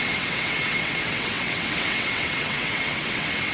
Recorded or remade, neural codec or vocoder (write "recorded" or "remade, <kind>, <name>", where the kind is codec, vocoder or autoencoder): remade, vocoder, WaveNeXt